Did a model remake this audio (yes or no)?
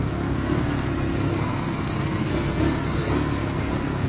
yes